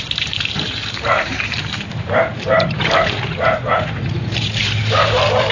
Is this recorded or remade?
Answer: remade